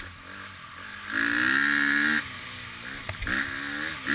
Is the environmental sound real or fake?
real